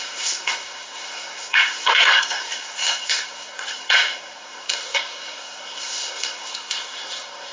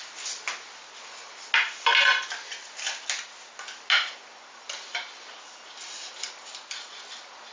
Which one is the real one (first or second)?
second